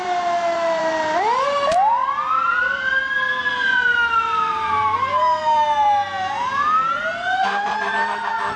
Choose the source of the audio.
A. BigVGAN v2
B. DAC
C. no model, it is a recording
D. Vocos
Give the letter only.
A